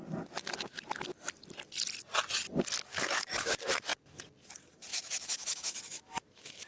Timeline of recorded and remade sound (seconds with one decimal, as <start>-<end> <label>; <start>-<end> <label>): 0.0-2.9 recorded; 2.9-3.5 remade; 3.5-4.9 recorded; 4.9-6.7 remade